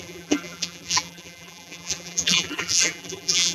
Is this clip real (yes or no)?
no